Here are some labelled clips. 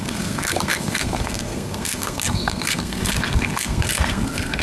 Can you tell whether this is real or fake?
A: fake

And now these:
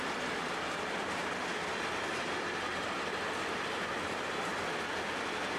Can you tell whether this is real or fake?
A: real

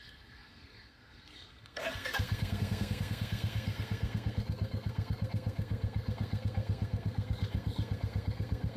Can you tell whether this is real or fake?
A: fake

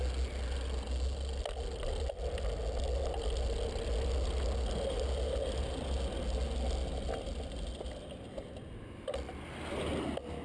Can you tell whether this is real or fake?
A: real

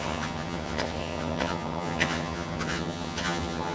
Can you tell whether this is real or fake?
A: fake